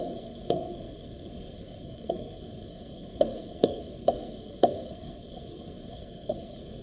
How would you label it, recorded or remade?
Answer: remade